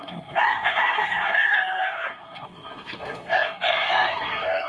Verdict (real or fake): fake